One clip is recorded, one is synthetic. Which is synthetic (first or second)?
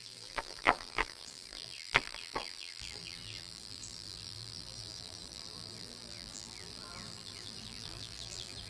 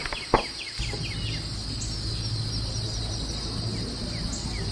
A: first